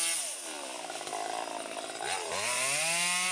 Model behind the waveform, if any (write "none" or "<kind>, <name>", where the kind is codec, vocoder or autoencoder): none